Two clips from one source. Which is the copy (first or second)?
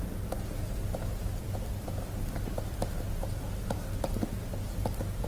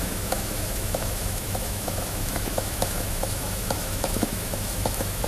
second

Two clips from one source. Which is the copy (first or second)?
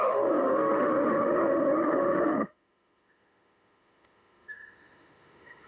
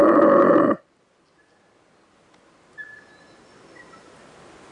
first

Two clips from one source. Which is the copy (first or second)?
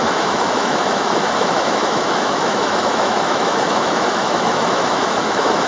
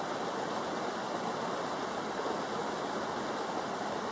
first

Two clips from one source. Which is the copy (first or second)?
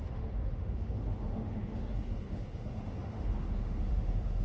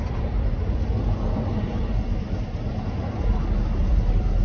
first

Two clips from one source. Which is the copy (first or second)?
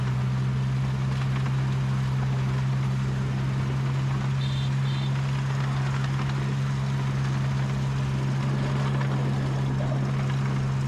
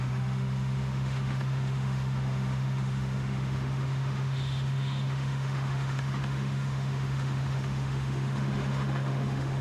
second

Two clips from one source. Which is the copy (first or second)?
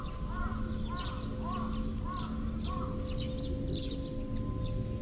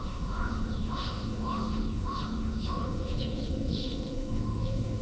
second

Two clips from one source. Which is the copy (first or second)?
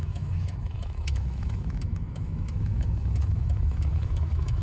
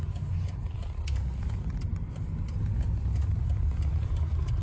first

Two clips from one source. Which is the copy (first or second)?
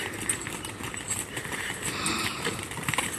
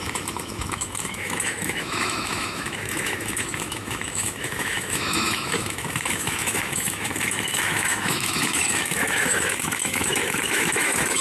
second